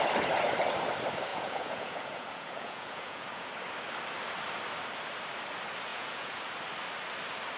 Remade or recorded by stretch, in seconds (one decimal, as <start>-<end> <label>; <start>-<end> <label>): 0.0-1.3 recorded; 1.3-3.5 remade; 3.5-5.9 recorded; 5.9-6.4 remade; 6.4-7.6 recorded